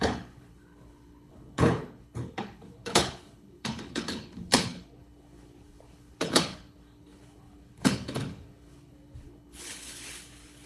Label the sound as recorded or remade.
remade